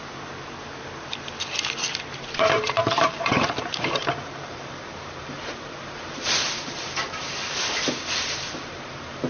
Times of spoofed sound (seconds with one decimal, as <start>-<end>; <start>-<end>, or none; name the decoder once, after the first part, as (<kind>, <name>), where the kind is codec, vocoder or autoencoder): 2.2-9.3 (vocoder, BigVGAN v2)